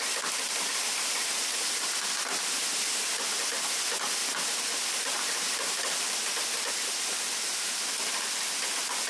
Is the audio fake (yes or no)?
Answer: no